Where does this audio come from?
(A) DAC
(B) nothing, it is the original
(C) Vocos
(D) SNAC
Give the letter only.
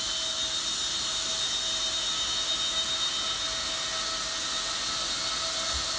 B